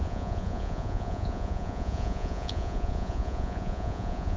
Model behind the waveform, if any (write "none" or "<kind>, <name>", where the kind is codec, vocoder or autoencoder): vocoder, Vocos